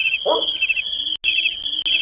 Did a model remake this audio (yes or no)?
no